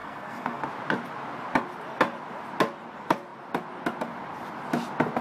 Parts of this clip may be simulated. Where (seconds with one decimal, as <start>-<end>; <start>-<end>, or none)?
0.0-0.6